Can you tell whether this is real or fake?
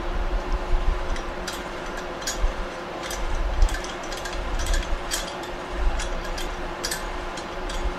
fake